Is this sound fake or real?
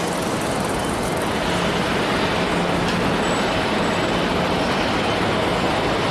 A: real